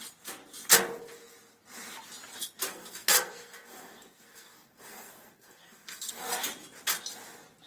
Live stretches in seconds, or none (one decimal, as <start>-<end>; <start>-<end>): 0.0-2.7; 6.3-7.7

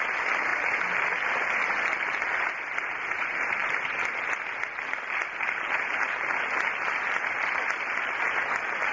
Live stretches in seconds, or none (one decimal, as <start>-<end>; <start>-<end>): 0.0-8.9

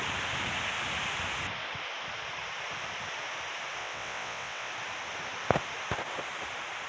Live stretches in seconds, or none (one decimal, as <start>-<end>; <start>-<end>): 0.0-3.8; 4.7-6.9

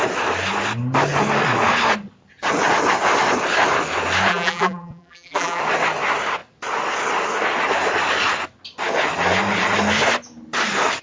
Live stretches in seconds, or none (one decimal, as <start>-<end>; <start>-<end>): 0.0-4.3; 5.6-11.0